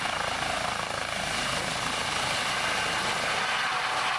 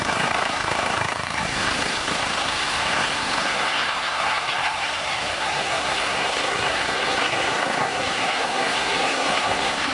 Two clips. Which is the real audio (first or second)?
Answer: first